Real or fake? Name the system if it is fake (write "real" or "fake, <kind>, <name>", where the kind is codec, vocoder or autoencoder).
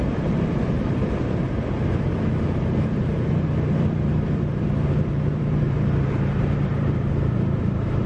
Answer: fake, vocoder, BigVGAN v2